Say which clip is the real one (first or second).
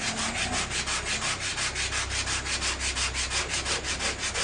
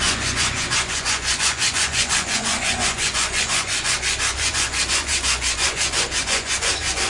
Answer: first